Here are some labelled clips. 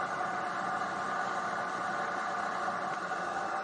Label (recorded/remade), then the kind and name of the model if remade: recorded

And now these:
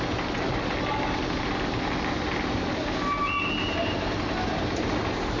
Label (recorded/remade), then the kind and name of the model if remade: recorded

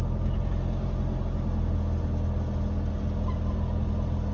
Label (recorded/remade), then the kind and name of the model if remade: recorded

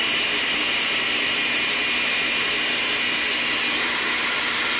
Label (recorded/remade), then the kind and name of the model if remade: recorded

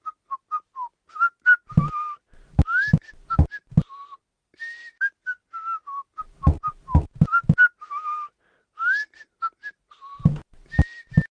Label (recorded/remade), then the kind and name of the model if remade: recorded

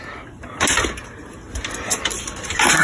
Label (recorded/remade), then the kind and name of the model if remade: recorded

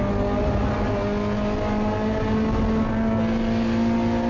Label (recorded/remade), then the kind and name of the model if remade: recorded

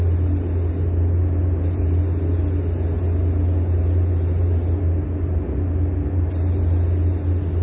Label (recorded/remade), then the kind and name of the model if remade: recorded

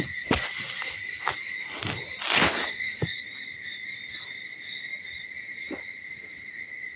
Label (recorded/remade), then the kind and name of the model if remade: recorded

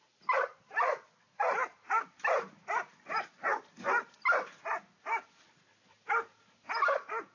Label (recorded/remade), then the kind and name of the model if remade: recorded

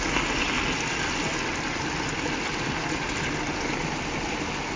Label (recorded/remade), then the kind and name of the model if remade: recorded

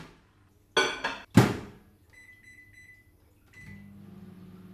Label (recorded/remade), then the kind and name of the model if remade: recorded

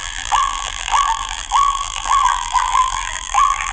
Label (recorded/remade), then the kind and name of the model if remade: remade, vocoder, BigVGAN v2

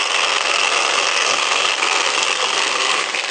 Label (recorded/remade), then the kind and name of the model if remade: remade, codec, SNAC